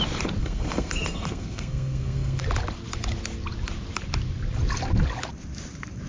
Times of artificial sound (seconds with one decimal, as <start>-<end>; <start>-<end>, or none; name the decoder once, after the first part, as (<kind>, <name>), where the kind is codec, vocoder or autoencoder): 0.4-2.4 (codec, SNAC)